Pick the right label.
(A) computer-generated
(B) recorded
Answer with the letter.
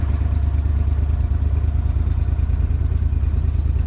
B